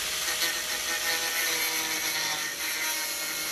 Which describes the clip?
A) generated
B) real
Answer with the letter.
B